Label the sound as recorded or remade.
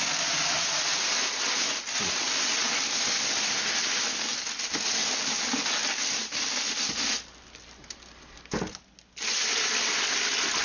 recorded